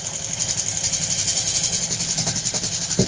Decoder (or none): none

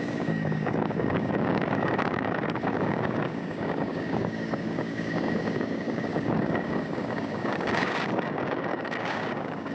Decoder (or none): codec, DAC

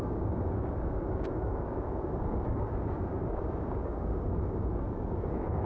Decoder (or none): codec, DAC